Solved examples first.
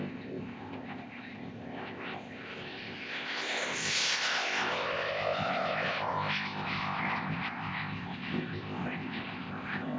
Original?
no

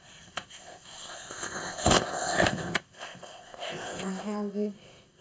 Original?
no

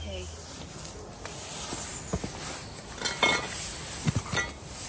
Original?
yes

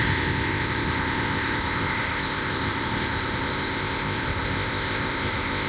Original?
no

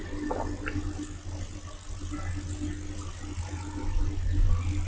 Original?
yes